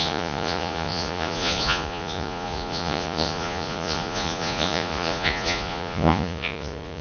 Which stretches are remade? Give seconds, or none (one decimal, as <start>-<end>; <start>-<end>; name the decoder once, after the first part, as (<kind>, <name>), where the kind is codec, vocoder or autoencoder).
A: 0.0-7.0 (vocoder, Vocos)